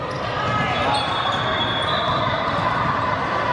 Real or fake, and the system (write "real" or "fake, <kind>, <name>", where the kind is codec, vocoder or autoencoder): real